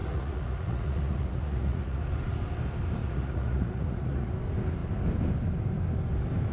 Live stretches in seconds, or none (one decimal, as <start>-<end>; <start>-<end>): 2.0-3.0; 4.3-6.5